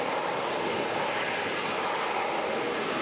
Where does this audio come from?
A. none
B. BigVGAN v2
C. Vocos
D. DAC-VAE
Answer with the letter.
A